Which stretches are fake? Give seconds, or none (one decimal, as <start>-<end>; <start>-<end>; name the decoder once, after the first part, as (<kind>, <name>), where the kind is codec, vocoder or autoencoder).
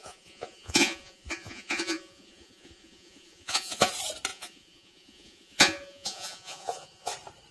0.0-3.9 (vocoder, Vocos); 4.3-7.1